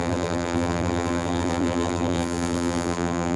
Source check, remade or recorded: remade